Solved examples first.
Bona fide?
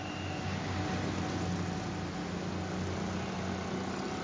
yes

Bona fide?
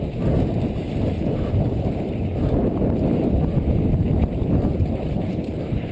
yes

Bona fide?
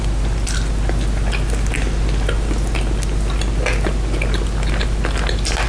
yes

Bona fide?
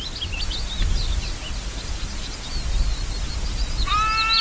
yes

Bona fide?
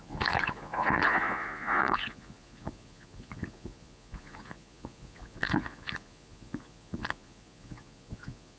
no